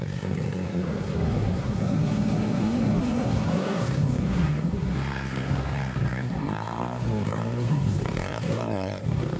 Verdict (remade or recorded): remade